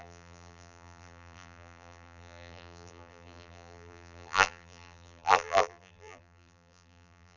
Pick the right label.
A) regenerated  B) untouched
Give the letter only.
A